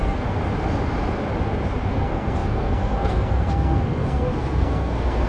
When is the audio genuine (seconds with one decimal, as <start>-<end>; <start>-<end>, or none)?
0.4-1.9